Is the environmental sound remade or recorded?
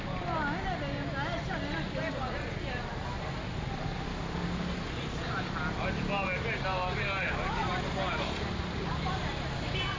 recorded